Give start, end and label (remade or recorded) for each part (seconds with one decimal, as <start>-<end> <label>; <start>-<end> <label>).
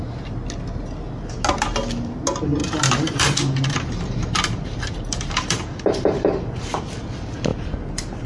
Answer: 0.0-2.6 recorded; 2.6-6.8 remade; 6.8-7.5 recorded; 7.5-8.3 remade